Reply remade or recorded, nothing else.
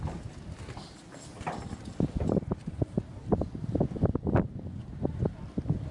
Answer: recorded